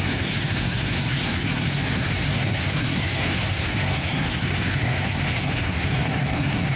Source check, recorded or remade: remade